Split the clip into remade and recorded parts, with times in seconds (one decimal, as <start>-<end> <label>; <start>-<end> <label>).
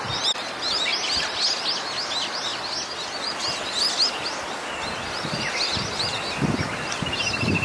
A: 0.0-7.6 recorded